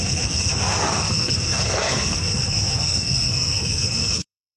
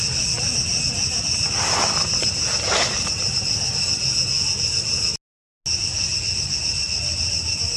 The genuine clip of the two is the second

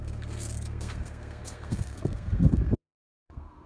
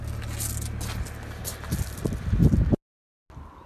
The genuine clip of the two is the second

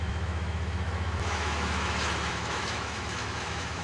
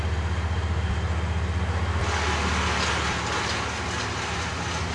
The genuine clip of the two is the second